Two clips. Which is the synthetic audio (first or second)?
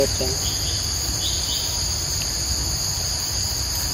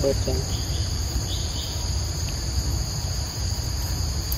second